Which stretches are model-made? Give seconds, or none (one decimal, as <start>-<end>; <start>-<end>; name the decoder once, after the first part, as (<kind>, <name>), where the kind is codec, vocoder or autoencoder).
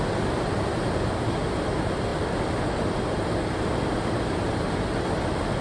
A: none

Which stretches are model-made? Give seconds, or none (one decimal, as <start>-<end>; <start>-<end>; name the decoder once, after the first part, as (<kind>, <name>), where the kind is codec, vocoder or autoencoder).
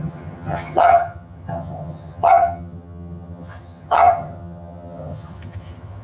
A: 0.0-6.0 (vocoder, HiFi-GAN)